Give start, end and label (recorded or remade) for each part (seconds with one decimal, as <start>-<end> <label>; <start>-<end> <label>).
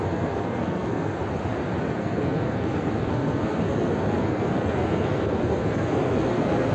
0.0-1.2 remade; 1.2-1.8 recorded; 1.8-6.7 remade